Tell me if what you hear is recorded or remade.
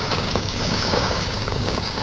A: remade